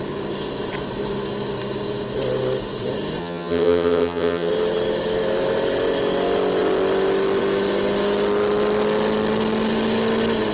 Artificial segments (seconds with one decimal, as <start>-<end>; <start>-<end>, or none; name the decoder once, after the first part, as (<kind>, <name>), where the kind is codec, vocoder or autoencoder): 3.2-4.5 (vocoder, HiFi-GAN)